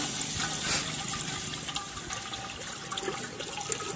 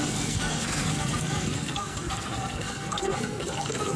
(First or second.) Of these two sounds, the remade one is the second